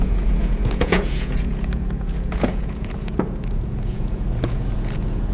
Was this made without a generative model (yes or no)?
no